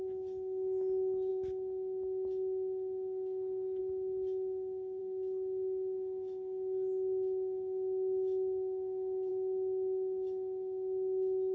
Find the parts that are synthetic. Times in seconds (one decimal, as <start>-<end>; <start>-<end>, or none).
none